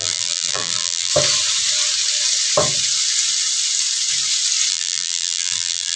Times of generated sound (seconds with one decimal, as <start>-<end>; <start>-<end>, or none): 0.0-1.1; 4.7-6.0